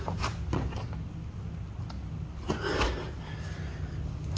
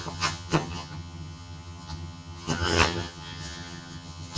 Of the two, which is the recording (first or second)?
first